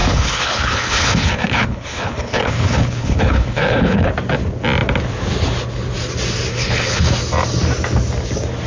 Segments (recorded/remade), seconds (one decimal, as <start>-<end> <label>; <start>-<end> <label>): 0.0-4.1 remade; 4.1-6.5 recorded; 6.5-7.1 remade; 7.1-8.7 recorded